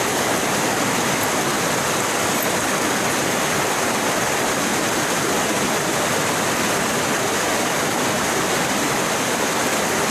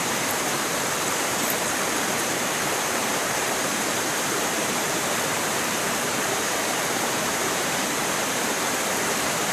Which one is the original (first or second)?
first